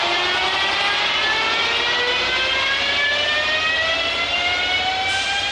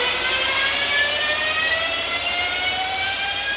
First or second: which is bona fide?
first